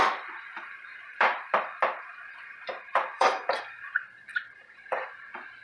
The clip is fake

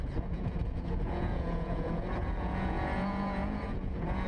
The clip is fake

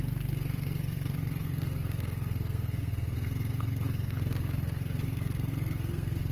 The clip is fake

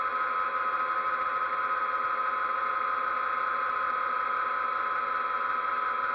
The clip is real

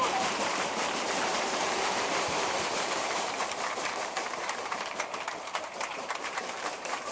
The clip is fake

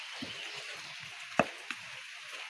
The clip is real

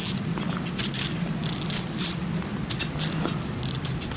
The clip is real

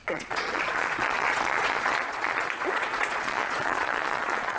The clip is fake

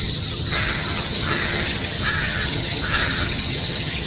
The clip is fake